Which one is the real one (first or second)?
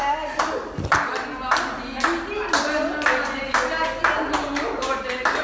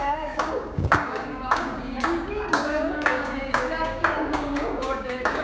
first